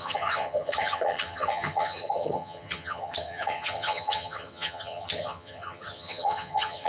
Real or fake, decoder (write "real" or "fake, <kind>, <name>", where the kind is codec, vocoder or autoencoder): fake, vocoder, HiFi-GAN